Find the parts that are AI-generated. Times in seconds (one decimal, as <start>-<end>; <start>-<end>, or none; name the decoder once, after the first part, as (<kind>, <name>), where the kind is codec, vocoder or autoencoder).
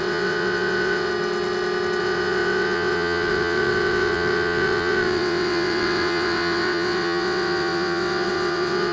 0.0-1.1 (vocoder, WaveNeXt); 2.0-8.9